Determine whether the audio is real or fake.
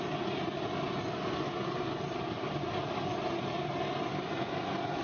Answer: real